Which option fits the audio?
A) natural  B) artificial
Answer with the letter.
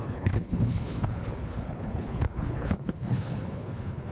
B